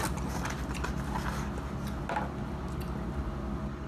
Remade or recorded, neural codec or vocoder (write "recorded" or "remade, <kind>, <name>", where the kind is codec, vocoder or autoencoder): recorded